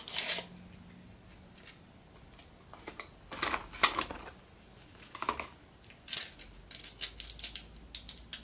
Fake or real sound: real